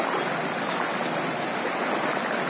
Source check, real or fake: real